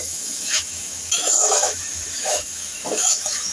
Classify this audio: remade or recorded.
remade